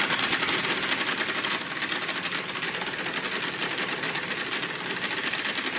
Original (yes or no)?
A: yes